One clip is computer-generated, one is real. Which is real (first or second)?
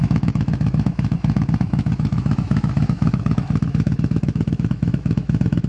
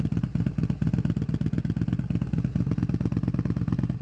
second